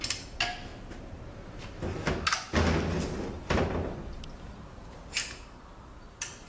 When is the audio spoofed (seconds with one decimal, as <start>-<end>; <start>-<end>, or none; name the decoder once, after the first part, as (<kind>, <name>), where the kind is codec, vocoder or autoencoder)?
none